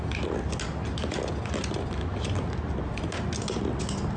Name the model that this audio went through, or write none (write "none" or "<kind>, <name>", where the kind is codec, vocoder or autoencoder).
none